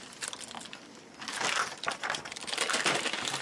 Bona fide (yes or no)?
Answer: yes